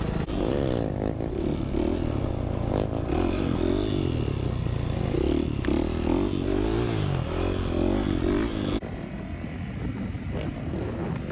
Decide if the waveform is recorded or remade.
recorded